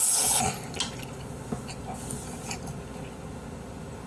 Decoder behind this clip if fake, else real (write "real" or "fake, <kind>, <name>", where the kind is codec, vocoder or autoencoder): real